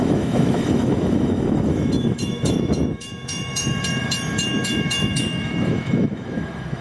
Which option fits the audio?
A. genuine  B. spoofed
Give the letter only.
B